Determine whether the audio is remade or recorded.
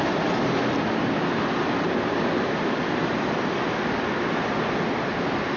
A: recorded